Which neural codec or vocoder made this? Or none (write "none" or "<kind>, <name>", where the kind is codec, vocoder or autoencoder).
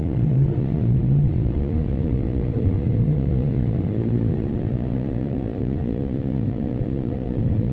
vocoder, Vocos